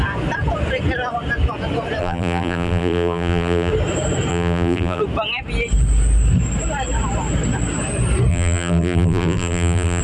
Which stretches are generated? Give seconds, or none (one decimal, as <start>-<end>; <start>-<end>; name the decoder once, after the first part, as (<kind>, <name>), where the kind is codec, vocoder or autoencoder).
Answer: 2.0-3.7 (vocoder, BigVGAN v2); 4.3-5.0; 8.3-10.0